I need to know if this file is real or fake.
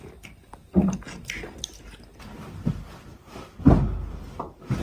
real